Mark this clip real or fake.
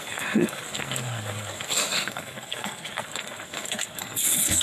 fake